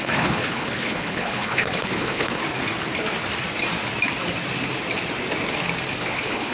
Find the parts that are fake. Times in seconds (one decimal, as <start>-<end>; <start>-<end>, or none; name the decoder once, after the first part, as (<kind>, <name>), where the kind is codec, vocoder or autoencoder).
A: 0.0-2.4 (codec, HILCodec); 6.0-6.5